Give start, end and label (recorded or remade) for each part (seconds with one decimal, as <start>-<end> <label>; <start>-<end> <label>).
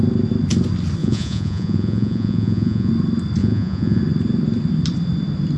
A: 0.0-1.0 recorded; 1.0-2.9 remade; 2.9-3.4 recorded; 3.4-4.0 remade; 4.0-5.6 recorded